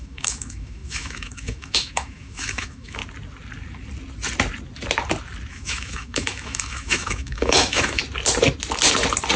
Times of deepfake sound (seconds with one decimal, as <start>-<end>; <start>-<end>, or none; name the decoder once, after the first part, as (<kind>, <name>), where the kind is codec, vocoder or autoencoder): 0.0-3.0 (autoencoder, DAC-VAE); 5.5-8.0